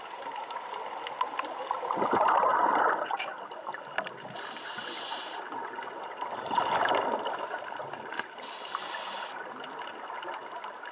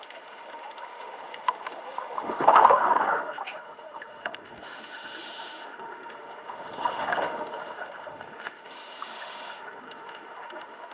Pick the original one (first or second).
first